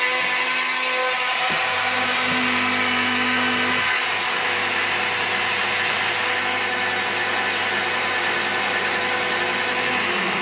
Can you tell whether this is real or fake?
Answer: real